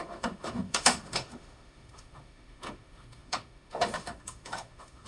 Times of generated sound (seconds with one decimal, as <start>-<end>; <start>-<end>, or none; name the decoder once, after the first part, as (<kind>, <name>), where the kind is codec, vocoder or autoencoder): 0.0-5.1 (autoencoder, DAC-VAE)